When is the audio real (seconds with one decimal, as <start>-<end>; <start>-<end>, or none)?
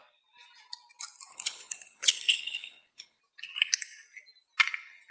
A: 0.0-1.3; 3.2-5.1